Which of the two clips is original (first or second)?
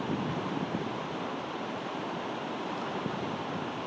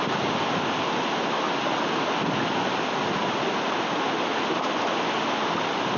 second